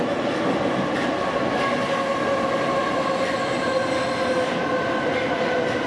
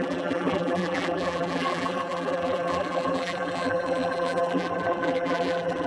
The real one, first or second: first